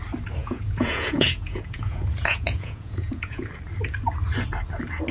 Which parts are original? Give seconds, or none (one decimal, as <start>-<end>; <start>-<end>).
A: 0.0-0.4; 3.5-5.1